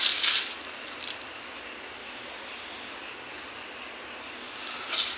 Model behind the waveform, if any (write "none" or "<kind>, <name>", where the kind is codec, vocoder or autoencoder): none